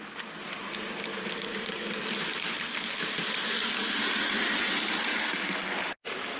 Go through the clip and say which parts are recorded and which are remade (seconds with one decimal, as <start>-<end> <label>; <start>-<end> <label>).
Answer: 0.0-6.4 recorded